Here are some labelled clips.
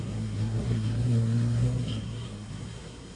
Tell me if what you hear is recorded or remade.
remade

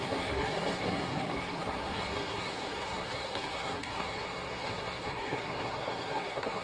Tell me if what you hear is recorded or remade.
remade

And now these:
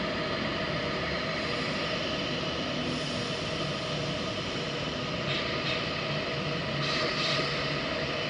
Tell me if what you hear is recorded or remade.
recorded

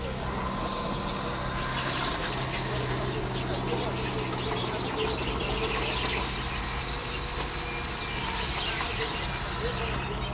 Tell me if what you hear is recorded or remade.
recorded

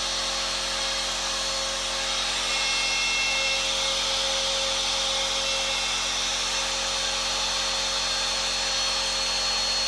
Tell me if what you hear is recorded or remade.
recorded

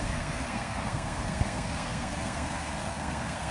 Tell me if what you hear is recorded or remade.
remade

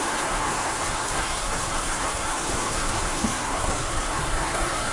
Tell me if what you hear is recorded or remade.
remade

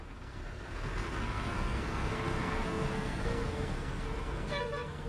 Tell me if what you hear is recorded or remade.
remade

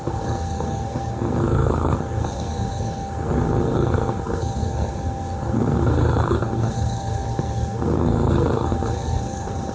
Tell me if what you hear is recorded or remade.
remade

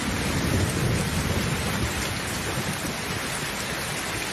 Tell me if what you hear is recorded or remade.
recorded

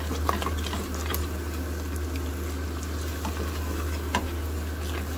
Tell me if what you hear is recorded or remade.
recorded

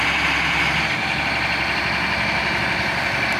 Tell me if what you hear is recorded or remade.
recorded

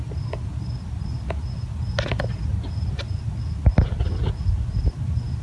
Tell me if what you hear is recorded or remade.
recorded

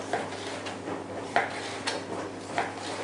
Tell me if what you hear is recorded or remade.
recorded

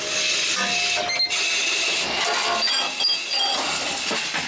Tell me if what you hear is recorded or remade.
recorded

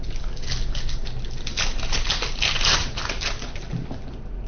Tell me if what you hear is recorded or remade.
recorded